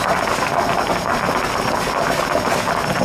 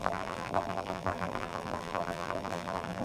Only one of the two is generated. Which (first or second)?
second